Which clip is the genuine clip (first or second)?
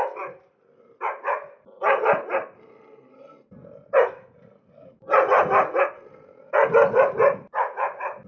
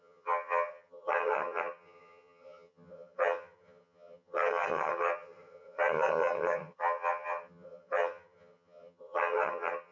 first